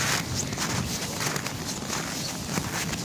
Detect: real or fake real